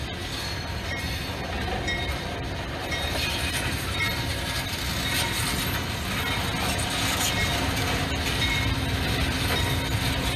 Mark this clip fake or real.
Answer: real